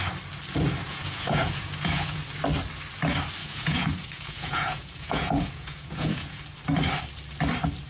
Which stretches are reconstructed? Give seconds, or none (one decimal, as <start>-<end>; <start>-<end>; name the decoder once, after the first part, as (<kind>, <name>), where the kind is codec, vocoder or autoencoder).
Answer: 0.8-2.2 (vocoder, Vocos); 3.4-6.4